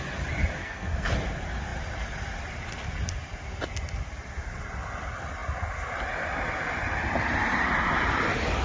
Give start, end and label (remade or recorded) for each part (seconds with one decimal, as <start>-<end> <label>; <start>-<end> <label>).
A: 0.0-0.6 recorded; 0.6-1.1 remade; 1.1-8.6 recorded

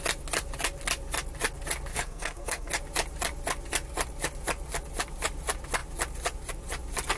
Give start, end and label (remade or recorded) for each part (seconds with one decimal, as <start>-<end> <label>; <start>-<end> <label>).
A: 0.0-1.9 recorded; 1.9-2.7 remade; 2.7-7.2 recorded

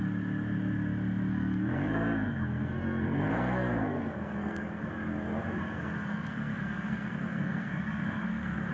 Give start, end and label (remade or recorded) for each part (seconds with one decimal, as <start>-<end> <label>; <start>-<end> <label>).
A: 0.0-1.3 recorded; 1.3-4.9 remade; 4.9-5.6 recorded; 5.6-8.7 remade

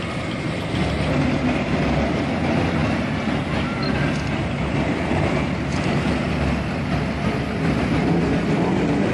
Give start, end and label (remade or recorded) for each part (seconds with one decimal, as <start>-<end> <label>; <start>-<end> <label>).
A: 0.0-9.1 recorded